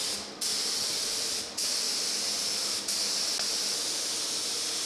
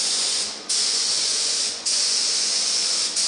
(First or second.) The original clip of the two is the first